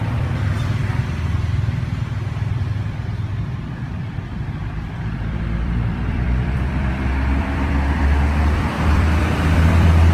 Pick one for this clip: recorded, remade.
remade